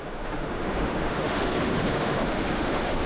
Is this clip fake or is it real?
fake